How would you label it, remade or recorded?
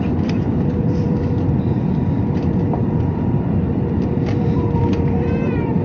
remade